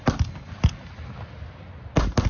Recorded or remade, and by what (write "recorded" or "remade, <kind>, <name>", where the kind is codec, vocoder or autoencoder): recorded